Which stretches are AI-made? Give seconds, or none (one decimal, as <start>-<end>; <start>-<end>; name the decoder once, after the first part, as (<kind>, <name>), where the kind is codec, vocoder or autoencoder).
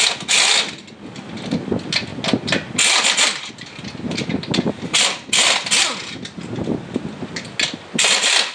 none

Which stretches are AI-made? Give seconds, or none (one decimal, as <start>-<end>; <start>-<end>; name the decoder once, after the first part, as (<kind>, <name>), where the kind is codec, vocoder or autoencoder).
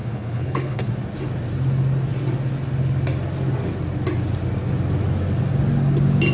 0.0-0.9 (codec, HILCodec)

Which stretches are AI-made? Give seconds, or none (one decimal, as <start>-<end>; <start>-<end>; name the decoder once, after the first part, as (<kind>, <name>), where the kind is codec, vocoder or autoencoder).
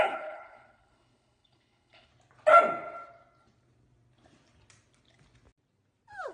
0.0-2.1 (codec, HILCodec)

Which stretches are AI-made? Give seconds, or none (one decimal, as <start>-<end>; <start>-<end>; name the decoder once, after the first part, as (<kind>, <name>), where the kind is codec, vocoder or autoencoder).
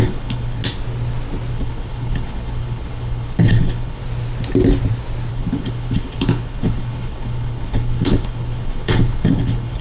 0.0-0.6 (codec, HILCodec); 1.5-4.0; 5.3-9.8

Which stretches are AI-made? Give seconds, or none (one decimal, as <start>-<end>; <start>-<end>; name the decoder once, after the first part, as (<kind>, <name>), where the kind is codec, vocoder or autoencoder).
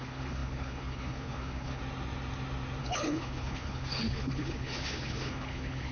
0.0-1.8 (codec, HILCodec); 2.8-5.9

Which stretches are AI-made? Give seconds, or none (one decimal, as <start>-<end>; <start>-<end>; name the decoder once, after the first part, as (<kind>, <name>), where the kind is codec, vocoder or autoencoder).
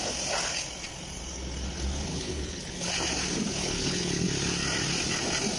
2.1-2.9 (codec, HILCodec); 3.6-4.3